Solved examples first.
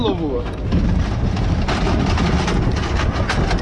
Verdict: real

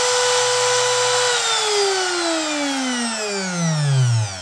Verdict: real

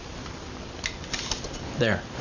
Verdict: real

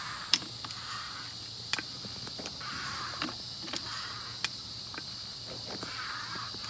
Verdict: real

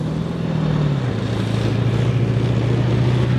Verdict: real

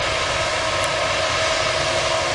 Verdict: real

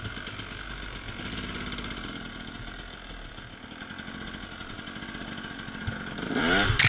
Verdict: real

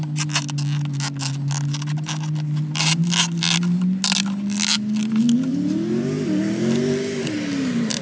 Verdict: real